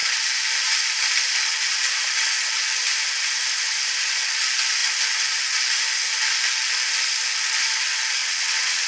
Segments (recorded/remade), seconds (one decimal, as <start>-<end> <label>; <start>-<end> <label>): 0.0-8.2 recorded; 8.2-8.9 remade